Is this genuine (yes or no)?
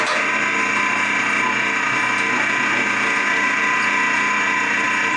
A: yes